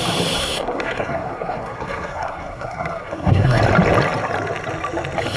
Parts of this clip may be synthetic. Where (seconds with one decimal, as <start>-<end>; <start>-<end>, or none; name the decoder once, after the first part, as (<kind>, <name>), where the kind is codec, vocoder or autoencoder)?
0.4-3.6 (codec, SNAC)